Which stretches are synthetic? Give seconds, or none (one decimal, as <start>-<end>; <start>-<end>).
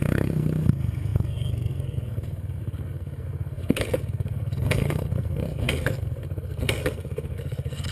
0.0-7.9